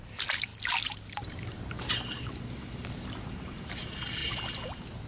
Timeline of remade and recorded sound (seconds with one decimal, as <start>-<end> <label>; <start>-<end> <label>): 0.0-4.2 remade; 4.2-5.1 recorded